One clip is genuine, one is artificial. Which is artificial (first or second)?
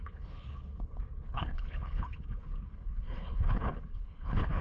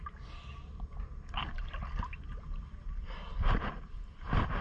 first